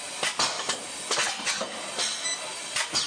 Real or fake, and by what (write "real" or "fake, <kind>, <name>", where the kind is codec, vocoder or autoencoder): real